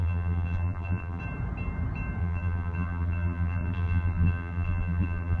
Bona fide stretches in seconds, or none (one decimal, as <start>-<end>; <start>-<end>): 1.2-2.2